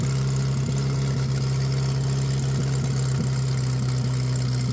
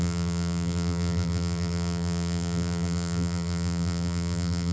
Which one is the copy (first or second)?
second